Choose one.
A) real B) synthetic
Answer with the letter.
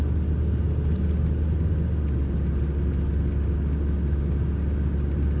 A